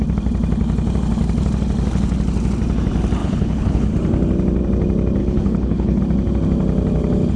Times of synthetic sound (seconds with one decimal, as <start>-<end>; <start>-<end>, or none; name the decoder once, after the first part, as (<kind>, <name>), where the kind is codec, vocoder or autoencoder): 3.2-3.9 (codec, HILCodec); 5.2-6.0